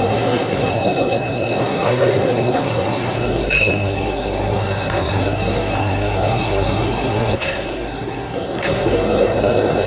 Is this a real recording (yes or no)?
no